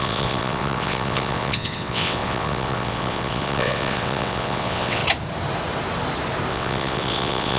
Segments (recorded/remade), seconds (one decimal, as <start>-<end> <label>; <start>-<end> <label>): 0.0-5.0 remade; 5.0-6.5 recorded; 6.5-7.6 remade